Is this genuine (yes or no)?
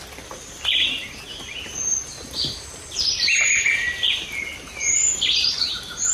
yes